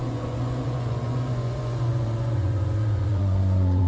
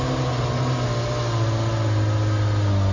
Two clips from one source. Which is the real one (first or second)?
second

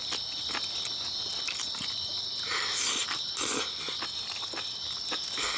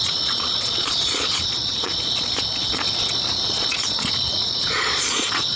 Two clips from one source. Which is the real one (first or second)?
first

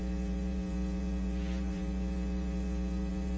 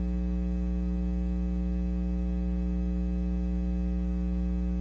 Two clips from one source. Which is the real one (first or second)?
second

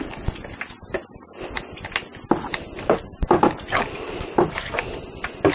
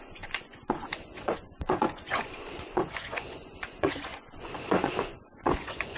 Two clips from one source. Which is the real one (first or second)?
first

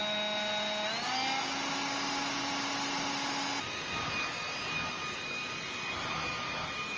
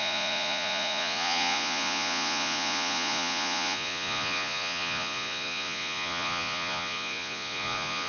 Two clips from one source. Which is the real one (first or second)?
first